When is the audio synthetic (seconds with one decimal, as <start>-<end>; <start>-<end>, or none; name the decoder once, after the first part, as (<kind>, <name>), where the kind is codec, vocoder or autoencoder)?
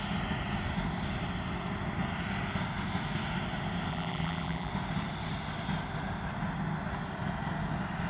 3.9-4.7 (vocoder, BigVGAN v2)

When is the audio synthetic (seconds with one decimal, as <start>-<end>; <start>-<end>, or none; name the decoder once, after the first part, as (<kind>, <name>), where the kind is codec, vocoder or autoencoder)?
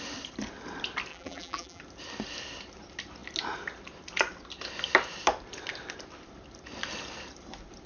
1.1-1.8 (vocoder, BigVGAN v2)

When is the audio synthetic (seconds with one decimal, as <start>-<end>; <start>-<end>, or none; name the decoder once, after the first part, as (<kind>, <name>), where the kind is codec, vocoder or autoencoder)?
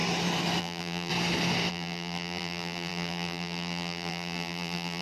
0.6-1.1 (vocoder, BigVGAN v2); 1.7-5.0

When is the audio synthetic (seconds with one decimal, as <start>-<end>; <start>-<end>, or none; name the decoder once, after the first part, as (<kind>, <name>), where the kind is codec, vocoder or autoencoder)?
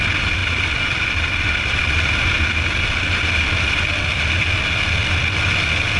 0.4-2.1 (vocoder, BigVGAN v2)